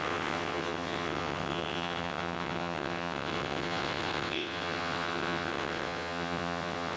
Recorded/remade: remade